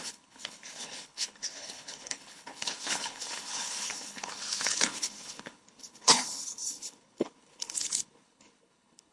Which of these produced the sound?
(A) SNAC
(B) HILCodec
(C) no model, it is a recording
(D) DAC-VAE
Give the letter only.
B